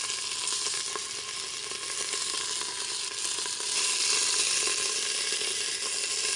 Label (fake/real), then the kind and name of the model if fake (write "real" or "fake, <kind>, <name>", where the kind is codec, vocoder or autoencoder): real